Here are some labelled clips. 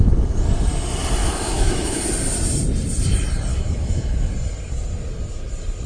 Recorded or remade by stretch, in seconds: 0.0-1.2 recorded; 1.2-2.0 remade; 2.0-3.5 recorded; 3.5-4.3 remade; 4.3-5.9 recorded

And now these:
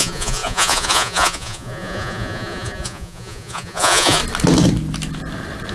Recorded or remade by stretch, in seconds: 0.0-4.2 remade; 4.2-5.7 recorded

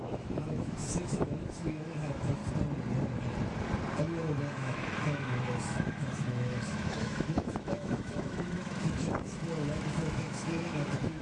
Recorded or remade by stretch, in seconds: 0.0-2.4 remade; 2.4-4.0 recorded; 4.0-11.2 remade

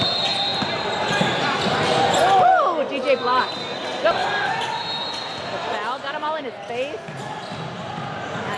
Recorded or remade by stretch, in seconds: 0.0-8.6 recorded

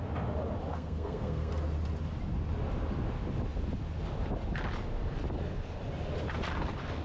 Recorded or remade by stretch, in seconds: 0.0-0.7 recorded; 0.7-1.5 remade; 1.5-7.0 recorded

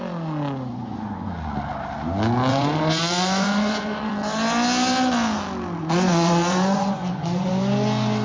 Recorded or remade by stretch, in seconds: 0.0-0.7 recorded; 0.7-1.6 remade; 1.6-2.5 recorded; 2.5-4.1 remade; 4.1-5.8 recorded; 5.8-7.5 remade; 7.5-8.2 recorded